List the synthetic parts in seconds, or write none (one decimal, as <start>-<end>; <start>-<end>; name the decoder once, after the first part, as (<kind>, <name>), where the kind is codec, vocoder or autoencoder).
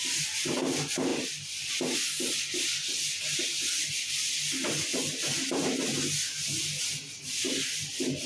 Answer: 4.9-8.3 (vocoder, BigVGAN v2)